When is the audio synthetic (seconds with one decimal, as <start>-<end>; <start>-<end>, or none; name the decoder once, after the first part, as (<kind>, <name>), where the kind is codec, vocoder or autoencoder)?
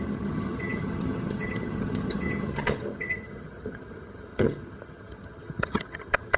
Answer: 0.0-6.4 (vocoder, HiFi-GAN)